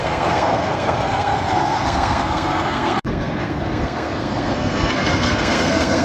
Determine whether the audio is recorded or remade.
remade